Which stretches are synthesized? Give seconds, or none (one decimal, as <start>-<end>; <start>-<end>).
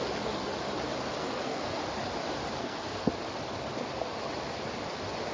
1.2-1.8; 2.6-3.1